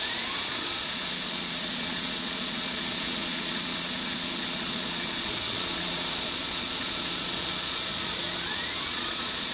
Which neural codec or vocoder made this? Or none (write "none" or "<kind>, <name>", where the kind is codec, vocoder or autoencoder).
vocoder, Vocos